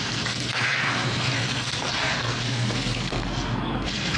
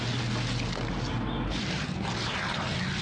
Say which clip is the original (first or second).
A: second